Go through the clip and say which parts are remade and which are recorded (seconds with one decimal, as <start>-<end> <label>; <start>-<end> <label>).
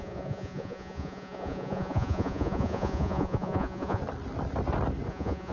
0.0-4.0 remade; 4.0-5.1 recorded; 5.1-5.5 remade